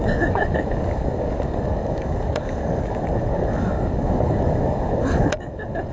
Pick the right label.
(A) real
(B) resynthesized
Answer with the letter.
B